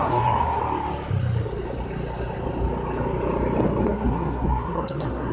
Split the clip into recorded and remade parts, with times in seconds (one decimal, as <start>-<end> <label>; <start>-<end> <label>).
0.0-0.6 remade; 0.6-3.8 recorded; 3.8-5.3 remade